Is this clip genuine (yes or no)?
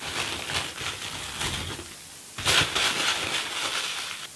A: yes